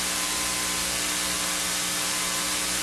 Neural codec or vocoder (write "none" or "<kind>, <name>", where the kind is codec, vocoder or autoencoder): none